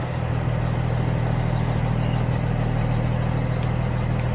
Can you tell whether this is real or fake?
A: real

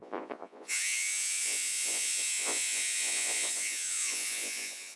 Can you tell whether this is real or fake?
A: fake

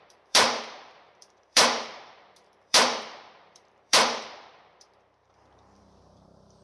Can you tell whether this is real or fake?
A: fake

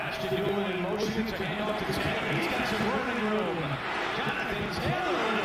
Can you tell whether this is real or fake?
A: real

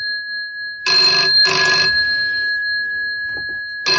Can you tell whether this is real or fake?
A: real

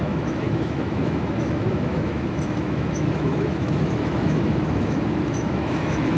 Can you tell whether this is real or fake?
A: fake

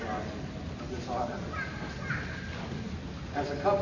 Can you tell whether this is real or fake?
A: real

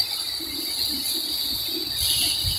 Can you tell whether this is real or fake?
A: real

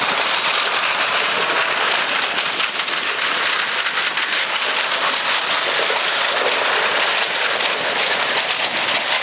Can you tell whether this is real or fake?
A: real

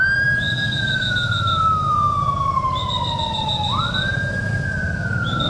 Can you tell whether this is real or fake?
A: fake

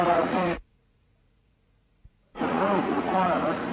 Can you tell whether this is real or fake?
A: fake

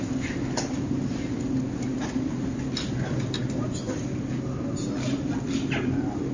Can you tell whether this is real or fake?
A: real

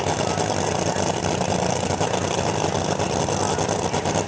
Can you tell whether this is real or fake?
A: real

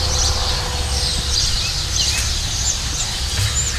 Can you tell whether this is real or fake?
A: real